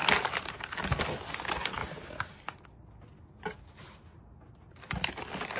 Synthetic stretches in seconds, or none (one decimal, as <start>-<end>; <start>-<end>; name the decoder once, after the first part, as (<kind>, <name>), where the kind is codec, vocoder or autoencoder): none